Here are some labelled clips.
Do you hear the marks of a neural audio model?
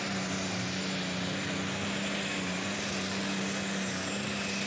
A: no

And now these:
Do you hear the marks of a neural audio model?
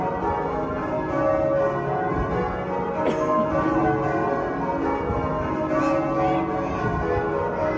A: no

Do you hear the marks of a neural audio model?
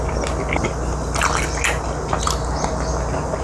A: no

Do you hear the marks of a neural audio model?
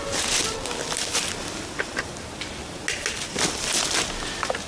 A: no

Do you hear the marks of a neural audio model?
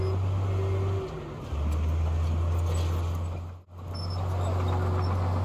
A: no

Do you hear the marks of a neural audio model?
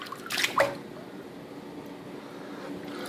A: no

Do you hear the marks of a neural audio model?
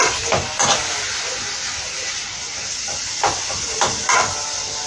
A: no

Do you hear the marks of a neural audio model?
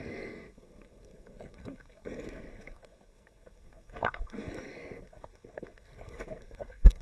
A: yes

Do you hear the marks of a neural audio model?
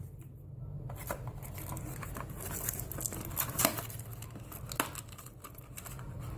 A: no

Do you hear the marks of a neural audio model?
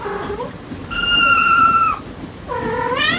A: no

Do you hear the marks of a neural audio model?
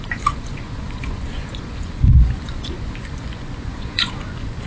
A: yes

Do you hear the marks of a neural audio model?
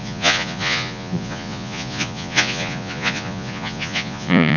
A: yes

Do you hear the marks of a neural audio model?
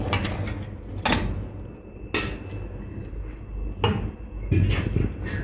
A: no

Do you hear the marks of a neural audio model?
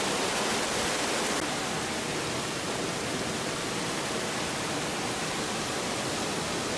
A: no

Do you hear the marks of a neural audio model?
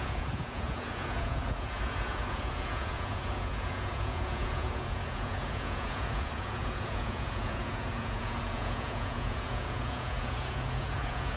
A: yes